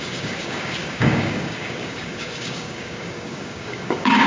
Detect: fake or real fake